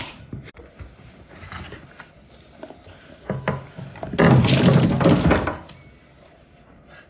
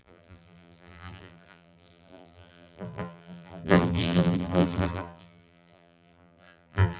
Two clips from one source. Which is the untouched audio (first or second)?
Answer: first